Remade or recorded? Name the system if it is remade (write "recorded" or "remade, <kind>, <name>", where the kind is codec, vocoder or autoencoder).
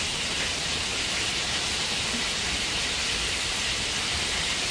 remade, vocoder, BigVGAN v2